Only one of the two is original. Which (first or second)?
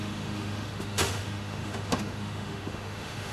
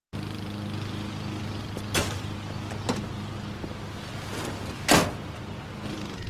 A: second